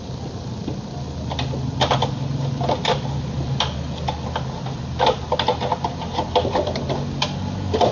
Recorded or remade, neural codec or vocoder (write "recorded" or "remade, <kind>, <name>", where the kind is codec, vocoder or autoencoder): recorded